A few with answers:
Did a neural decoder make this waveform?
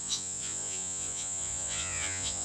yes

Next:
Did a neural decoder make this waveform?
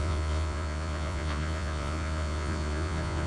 yes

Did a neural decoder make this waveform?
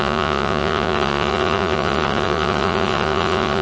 yes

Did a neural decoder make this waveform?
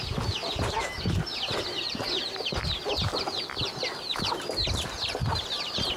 no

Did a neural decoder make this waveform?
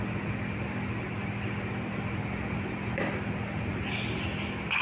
no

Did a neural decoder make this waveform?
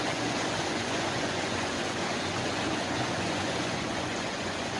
yes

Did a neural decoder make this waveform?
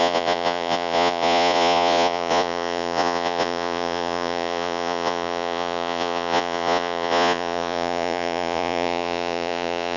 yes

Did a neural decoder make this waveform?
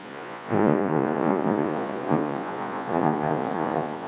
yes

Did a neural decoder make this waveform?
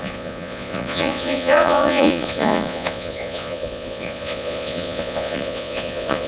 yes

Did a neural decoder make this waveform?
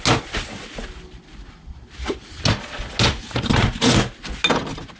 no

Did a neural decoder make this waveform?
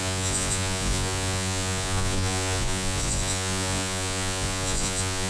yes